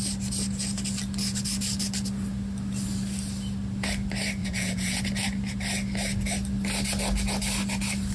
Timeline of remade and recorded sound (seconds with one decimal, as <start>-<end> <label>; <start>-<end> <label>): 0.0-4.4 recorded; 4.4-5.0 remade; 5.0-8.1 recorded